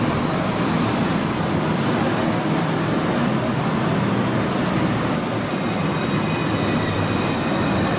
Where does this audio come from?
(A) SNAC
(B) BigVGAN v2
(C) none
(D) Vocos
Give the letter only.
C